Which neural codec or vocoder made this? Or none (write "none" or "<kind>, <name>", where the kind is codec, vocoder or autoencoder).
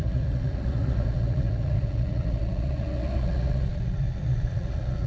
vocoder, Vocos